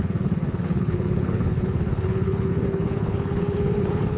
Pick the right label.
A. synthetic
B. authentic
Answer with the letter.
A